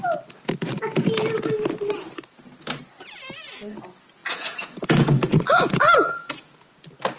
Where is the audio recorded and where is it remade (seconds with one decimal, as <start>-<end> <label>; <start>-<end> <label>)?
0.0-4.2 recorded; 4.2-6.8 remade; 6.8-7.2 recorded